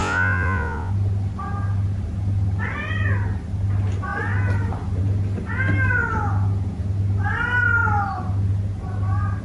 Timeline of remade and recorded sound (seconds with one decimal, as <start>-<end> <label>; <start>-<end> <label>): 0.0-0.9 remade; 0.9-9.4 recorded